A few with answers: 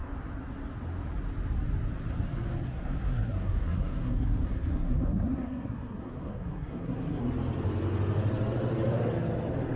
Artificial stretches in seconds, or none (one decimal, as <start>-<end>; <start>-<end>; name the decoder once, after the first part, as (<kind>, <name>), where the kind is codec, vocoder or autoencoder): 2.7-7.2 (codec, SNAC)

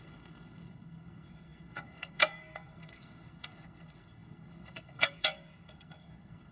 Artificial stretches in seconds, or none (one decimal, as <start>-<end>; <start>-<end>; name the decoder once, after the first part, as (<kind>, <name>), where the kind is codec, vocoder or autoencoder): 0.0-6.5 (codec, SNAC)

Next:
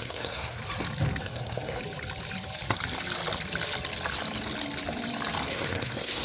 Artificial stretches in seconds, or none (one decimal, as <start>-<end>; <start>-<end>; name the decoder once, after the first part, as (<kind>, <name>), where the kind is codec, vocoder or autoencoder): 0.0-0.6 (codec, SNAC); 1.2-1.8; 5.5-6.2